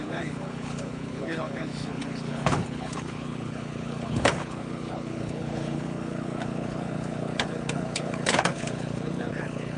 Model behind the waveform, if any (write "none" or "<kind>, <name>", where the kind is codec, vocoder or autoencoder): codec, HILCodec